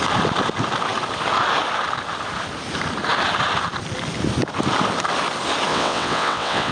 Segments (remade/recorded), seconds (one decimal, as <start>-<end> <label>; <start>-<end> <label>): 0.0-5.7 recorded; 5.7-6.7 remade